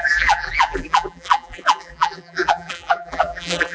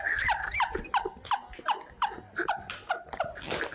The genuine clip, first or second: second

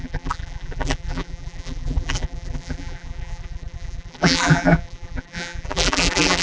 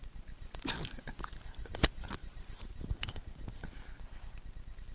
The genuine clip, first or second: second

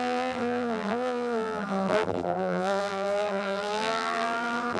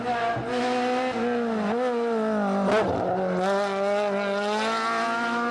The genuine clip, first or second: second